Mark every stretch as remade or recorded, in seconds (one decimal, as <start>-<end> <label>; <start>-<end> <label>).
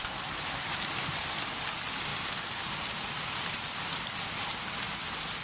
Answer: 0.0-5.4 recorded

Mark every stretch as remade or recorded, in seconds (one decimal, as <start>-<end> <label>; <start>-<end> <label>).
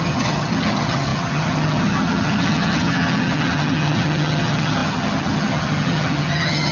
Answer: 0.0-6.7 remade